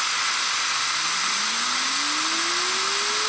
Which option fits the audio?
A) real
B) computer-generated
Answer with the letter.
A